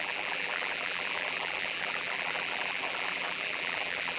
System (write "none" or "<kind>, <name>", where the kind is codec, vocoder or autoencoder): vocoder, BigVGAN v2